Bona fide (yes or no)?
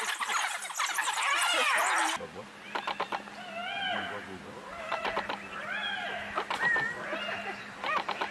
yes